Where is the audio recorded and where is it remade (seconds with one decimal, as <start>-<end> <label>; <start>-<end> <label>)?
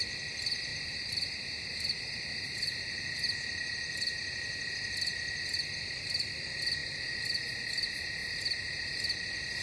0.0-0.7 recorded; 0.7-4.7 remade; 4.7-8.2 recorded; 8.2-8.8 remade; 8.8-9.6 recorded